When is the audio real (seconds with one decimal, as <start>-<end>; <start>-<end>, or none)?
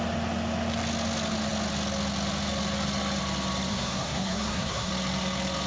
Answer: 0.0-3.7; 4.9-5.7